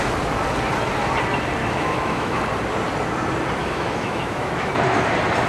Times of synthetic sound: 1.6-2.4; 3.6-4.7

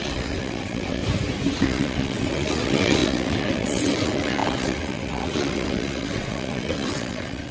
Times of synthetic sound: 0.0-1.0; 1.6-7.5

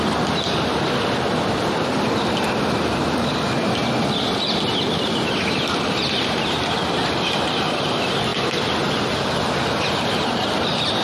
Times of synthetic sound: 0.0-3.8; 4.6-8.3; 9.9-11.0